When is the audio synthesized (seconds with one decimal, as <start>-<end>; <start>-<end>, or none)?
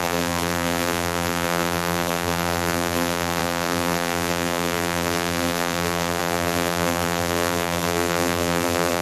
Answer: 0.0-9.0